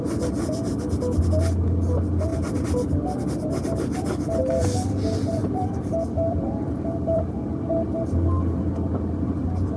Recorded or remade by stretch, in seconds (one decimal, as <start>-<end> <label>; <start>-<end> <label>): 0.0-2.3 recorded; 2.3-4.4 remade; 4.4-5.4 recorded; 5.4-7.2 remade; 7.2-9.8 recorded